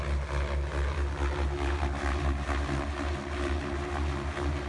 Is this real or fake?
real